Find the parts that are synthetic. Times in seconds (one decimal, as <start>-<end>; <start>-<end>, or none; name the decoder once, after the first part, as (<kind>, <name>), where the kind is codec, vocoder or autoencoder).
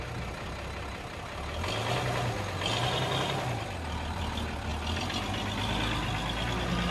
none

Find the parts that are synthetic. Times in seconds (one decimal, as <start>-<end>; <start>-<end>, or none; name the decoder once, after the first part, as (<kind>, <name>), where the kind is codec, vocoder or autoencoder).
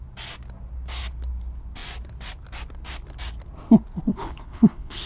4.1-5.1 (codec, HILCodec)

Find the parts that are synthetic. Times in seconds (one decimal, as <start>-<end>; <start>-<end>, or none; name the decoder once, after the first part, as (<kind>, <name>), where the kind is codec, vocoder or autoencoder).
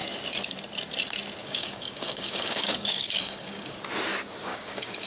1.4-3.8 (codec, DAC); 4.5-5.1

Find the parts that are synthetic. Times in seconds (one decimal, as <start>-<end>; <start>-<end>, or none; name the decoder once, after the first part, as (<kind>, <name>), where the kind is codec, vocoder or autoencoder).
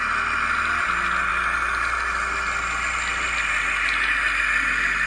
none